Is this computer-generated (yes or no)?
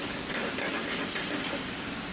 no